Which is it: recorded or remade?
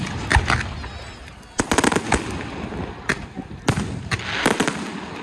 recorded